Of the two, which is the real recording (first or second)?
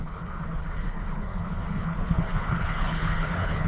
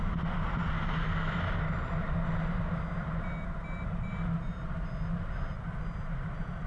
second